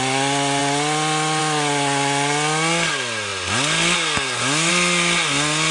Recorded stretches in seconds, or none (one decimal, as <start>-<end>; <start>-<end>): 0.0-5.7